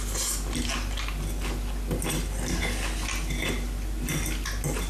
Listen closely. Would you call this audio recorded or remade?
recorded